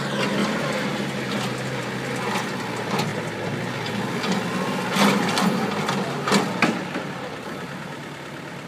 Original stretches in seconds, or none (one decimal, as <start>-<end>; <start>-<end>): 0.0-6.8; 7.9-8.7